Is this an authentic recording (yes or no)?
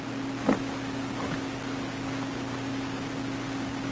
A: yes